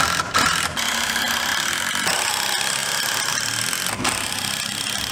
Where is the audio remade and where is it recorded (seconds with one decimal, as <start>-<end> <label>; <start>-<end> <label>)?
0.0-1.5 recorded; 1.5-2.3 remade; 2.3-5.1 recorded